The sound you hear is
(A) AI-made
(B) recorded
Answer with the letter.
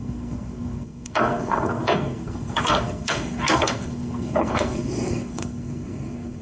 A